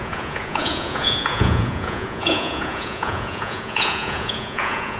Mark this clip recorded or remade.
remade